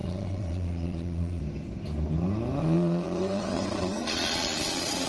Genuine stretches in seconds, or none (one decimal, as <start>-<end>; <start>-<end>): 1.4-2.6